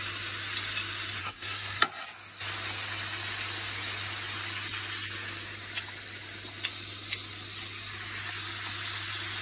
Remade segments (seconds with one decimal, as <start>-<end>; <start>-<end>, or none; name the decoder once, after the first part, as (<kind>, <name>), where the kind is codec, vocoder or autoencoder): 1.2-1.8 (codec, SNAC)